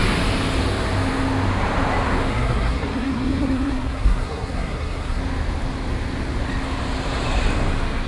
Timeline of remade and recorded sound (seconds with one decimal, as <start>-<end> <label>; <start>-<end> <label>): 0.0-2.3 recorded; 2.3-5.2 remade; 5.2-8.1 recorded